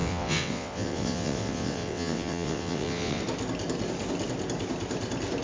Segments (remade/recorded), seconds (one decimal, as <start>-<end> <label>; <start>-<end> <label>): 0.0-3.2 remade; 3.2-5.4 recorded